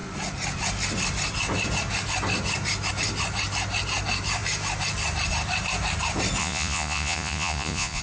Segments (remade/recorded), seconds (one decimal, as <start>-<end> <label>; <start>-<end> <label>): 0.0-6.4 recorded; 6.4-8.0 remade